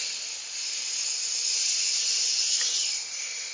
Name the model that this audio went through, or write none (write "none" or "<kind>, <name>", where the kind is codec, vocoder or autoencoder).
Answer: none